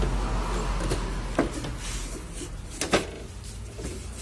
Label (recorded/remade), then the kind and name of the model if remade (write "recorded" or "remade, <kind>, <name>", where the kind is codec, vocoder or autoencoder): recorded